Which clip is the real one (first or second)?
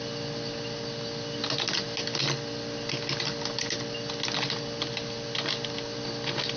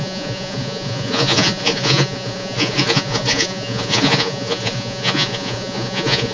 first